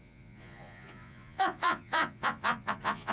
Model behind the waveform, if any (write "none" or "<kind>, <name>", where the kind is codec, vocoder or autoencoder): vocoder, Vocos